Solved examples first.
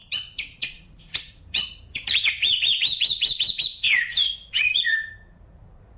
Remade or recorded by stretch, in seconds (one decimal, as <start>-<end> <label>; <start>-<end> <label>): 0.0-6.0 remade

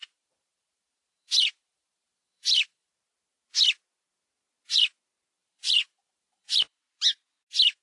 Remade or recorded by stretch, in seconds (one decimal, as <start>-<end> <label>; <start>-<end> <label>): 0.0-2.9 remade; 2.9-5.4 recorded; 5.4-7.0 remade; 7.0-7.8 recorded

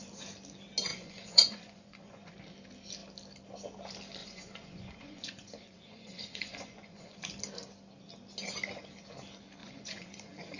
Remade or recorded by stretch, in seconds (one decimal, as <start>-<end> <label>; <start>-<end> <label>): 0.0-0.9 recorded; 0.9-2.3 remade; 2.3-4.2 recorded; 4.2-7.2 remade; 7.2-9.6 recorded; 9.6-10.6 remade

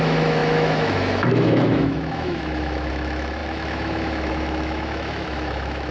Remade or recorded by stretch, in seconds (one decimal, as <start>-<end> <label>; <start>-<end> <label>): 0.0-5.9 remade

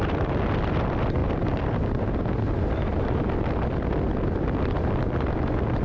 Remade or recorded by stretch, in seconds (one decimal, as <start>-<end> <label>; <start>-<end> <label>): 0.0-1.2 recorded; 1.2-3.4 remade; 3.4-5.8 recorded